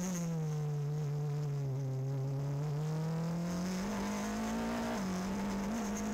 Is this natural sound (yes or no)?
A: yes